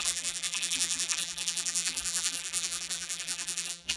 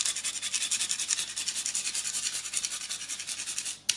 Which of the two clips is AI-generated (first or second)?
first